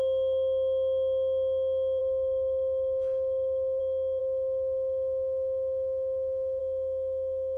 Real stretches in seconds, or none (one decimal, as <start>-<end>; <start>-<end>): 0.0-2.0; 3.8-4.2; 6.6-7.6